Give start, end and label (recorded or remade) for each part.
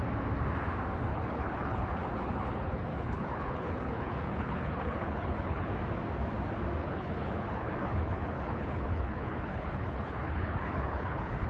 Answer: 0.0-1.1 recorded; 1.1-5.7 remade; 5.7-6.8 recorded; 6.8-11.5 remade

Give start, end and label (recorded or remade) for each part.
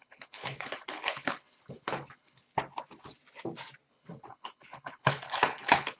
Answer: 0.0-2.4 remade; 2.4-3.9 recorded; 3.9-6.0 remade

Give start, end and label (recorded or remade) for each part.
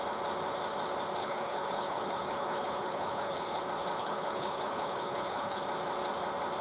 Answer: 0.0-1.2 recorded; 1.2-3.6 remade; 3.6-4.0 recorded; 4.0-5.6 remade; 5.6-6.6 recorded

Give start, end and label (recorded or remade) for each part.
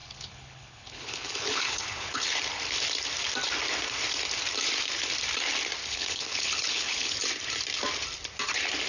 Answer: 0.0-2.4 remade; 2.4-5.8 recorded; 5.8-7.2 remade; 7.2-8.9 recorded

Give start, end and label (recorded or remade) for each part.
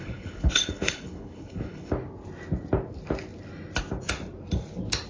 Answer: 0.0-1.9 remade; 1.9-5.1 recorded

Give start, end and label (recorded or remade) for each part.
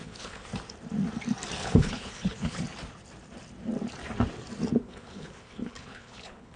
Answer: 0.0-0.5 remade; 0.5-1.6 recorded; 1.6-2.6 remade; 2.6-4.8 recorded; 4.8-6.6 remade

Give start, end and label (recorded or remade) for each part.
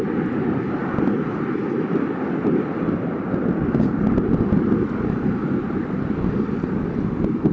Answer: 0.0-7.5 recorded